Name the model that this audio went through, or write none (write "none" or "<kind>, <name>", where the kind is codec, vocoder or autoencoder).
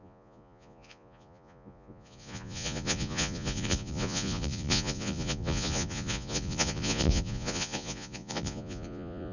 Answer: vocoder, Vocos